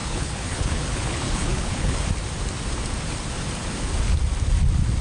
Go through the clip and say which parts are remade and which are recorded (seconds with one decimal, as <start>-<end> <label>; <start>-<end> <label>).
0.0-2.0 remade; 2.0-5.0 recorded